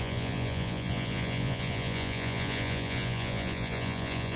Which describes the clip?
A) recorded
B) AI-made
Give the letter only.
B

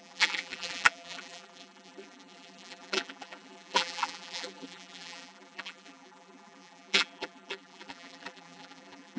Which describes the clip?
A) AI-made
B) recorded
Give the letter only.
A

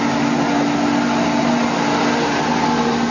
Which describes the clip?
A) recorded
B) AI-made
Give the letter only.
A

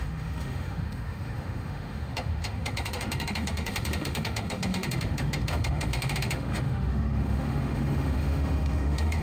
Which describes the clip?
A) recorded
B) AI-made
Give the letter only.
B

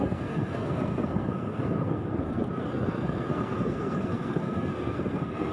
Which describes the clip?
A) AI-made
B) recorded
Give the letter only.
A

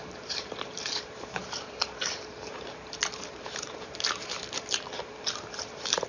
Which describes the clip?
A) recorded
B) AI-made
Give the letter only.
B